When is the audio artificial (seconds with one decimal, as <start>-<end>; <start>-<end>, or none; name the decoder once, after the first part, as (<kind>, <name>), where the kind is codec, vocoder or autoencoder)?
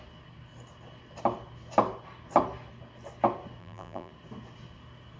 3.6-4.1 (vocoder, BigVGAN v2)